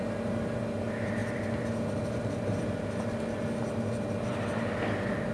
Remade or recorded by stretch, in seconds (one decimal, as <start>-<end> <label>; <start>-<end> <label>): 0.0-5.3 recorded